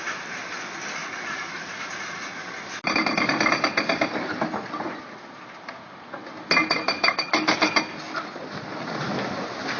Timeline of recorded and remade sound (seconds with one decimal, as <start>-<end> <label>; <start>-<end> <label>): 0.0-1.0 recorded; 1.0-2.4 remade; 2.4-9.8 recorded